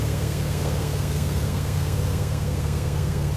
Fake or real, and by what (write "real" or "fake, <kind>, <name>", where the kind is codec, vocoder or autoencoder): fake, codec, SNAC